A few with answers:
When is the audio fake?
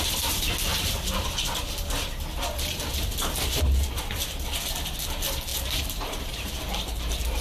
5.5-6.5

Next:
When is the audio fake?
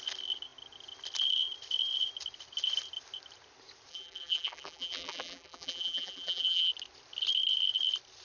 3.9-6.7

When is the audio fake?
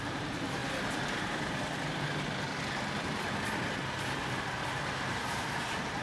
0.0-0.6; 3.7-6.0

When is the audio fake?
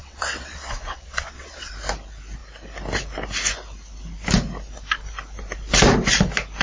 0.0-1.7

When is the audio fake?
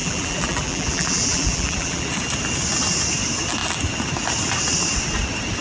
0.0-2.1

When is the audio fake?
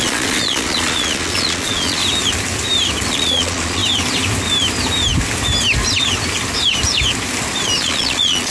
0.0-2.0; 3.1-3.8; 7.8-8.5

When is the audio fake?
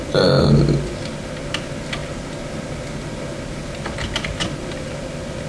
none